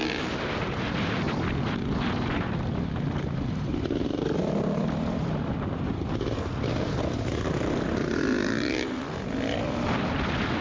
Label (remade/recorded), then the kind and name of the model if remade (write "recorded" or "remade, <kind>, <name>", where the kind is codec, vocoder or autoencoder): recorded